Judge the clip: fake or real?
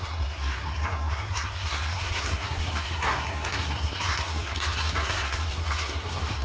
fake